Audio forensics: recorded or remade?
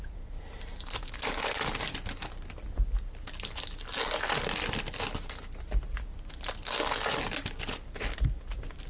recorded